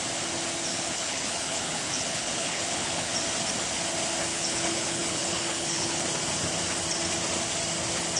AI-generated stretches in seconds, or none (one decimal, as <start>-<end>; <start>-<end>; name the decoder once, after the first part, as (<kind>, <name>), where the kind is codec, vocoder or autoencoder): 0.7-3.1 (codec, HILCodec); 4.3-6.0